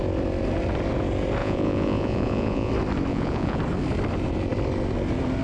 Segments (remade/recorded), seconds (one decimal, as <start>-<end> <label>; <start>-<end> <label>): 0.0-1.4 recorded; 1.4-2.7 remade; 2.7-3.1 recorded; 3.1-3.6 remade; 3.6-5.4 recorded

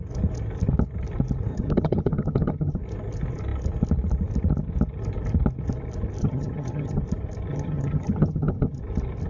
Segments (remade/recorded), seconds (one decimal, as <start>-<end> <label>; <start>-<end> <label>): 0.0-1.5 recorded; 1.5-2.8 remade; 2.8-6.2 recorded; 6.2-7.0 remade; 7.0-7.5 recorded; 7.5-8.8 remade; 8.8-9.3 recorded

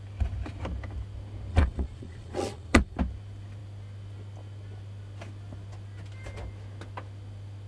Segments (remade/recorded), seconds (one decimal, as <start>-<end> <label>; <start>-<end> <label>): 0.0-1.5 recorded; 1.5-3.0 remade; 3.0-7.7 recorded

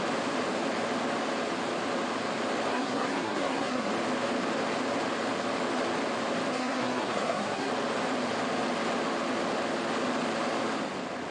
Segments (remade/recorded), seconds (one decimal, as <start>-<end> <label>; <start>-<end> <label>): 0.0-2.7 recorded; 2.7-3.9 remade; 3.9-6.5 recorded; 6.5-7.7 remade; 7.7-11.3 recorded

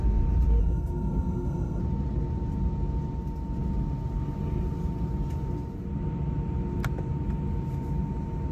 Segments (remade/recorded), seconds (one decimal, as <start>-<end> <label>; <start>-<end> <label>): 0.0-0.6 recorded; 0.6-1.8 remade; 1.8-8.5 recorded

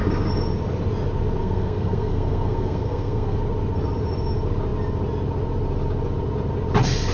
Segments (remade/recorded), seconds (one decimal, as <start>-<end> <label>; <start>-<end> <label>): 0.0-1.4 recorded; 1.4-3.4 remade; 3.4-7.1 recorded